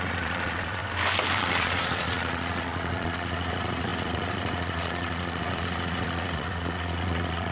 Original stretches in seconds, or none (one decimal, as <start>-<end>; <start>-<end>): 0.8-1.4